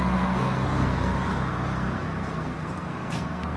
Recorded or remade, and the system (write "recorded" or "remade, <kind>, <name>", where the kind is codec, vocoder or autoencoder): remade, codec, SNAC